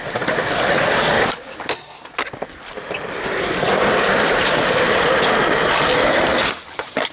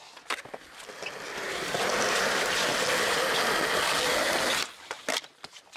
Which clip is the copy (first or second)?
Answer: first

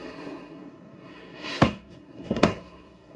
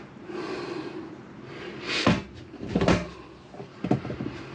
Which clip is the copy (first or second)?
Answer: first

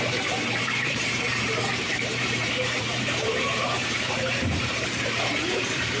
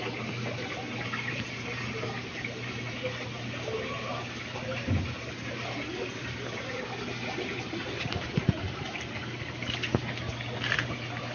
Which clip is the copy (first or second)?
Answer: first